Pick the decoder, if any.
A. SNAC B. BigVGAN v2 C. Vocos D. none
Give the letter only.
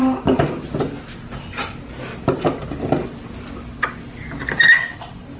D